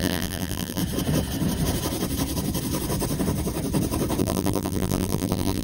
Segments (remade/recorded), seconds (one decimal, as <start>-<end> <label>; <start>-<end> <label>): 0.0-0.8 remade; 0.8-4.2 recorded; 4.2-5.6 remade